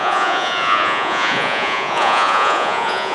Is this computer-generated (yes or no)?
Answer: yes